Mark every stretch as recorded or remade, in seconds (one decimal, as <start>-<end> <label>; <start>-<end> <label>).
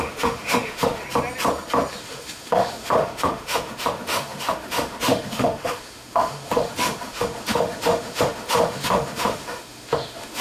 0.0-1.0 remade; 1.0-2.0 recorded; 2.0-10.4 remade